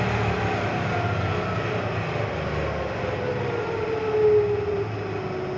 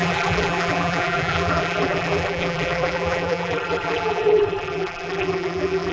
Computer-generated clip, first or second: second